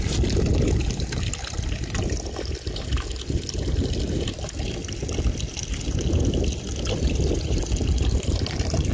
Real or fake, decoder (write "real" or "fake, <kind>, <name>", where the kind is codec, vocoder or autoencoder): real